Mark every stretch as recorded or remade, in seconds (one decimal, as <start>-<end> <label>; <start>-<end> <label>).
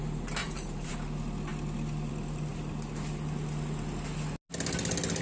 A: 0.0-0.4 recorded; 0.4-0.9 remade; 0.9-5.2 recorded